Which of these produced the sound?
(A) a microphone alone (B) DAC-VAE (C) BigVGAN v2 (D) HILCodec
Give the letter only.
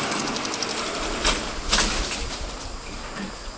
A